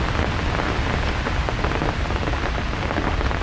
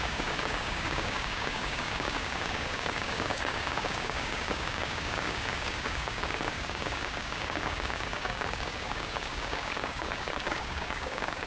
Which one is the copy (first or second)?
second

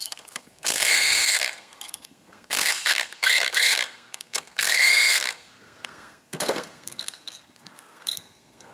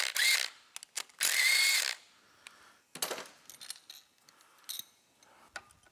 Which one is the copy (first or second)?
first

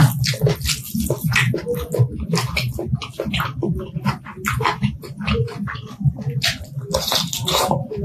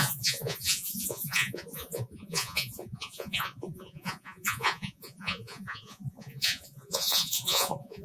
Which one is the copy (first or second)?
second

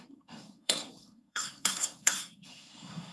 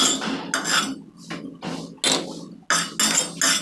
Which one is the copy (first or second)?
first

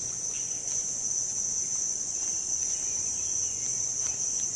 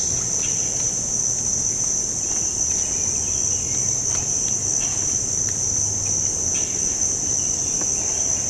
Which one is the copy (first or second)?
first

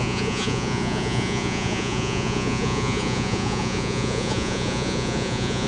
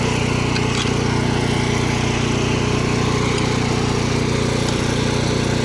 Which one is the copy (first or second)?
first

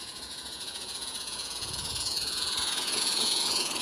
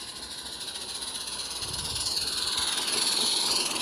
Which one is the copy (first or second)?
first